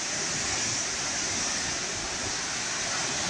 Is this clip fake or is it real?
real